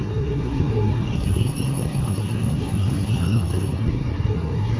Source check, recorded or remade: remade